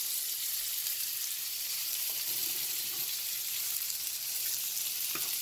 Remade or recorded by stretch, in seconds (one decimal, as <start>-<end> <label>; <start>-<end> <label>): 0.0-0.8 recorded; 0.8-4.0 remade; 4.0-5.4 recorded